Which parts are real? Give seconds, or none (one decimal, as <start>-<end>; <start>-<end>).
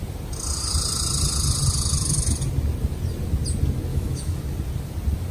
0.0-3.9; 4.4-5.3